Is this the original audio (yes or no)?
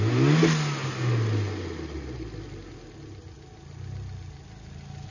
yes